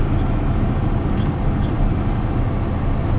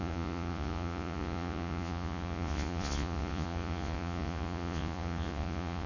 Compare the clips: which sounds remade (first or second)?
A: second